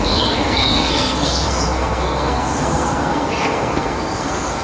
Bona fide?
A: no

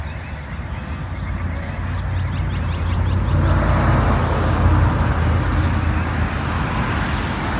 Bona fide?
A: yes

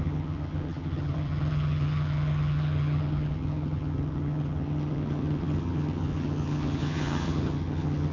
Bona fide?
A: no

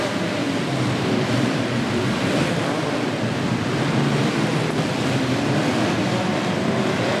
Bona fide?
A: no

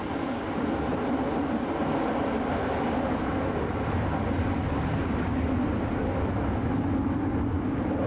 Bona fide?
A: yes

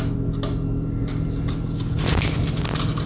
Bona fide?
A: yes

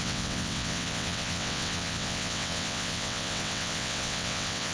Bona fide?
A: no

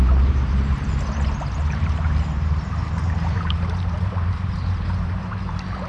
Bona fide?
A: no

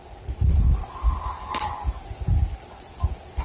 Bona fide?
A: yes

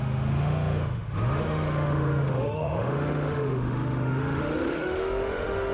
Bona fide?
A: no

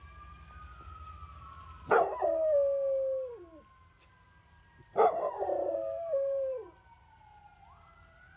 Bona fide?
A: yes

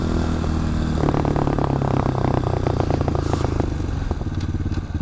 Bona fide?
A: yes